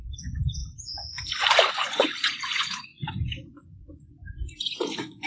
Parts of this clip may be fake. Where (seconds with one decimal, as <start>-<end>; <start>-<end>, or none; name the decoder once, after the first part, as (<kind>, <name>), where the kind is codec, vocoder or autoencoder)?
0.0-0.6 (vocoder, Vocos); 1.7-5.3